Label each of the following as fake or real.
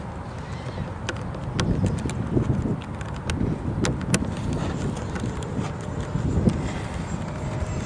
real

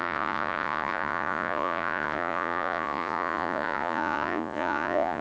fake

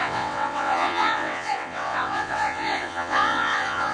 fake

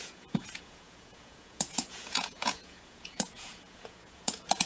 fake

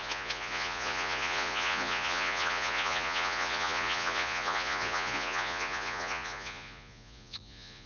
fake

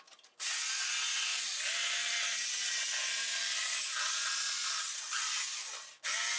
real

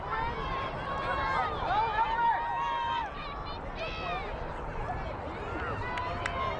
real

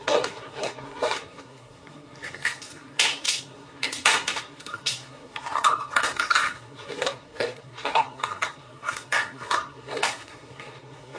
fake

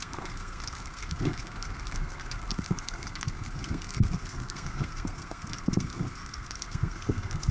fake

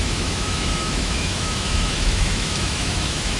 fake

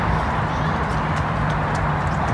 real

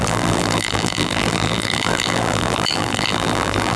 fake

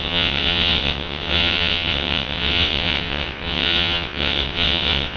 fake